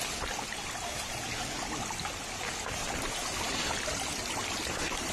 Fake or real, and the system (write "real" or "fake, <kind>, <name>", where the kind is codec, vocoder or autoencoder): real